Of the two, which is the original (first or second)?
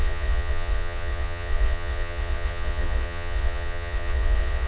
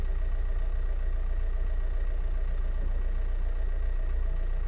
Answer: second